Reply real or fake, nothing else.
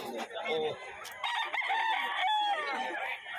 real